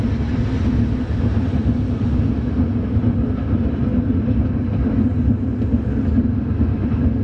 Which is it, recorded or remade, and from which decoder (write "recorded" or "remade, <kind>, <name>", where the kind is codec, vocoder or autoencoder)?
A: recorded